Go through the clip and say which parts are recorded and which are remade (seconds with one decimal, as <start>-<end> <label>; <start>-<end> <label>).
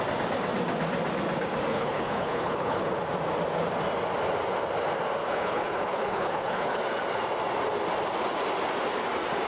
0.0-1.7 recorded; 1.7-2.9 remade; 2.9-5.2 recorded; 5.2-6.8 remade; 6.8-9.5 recorded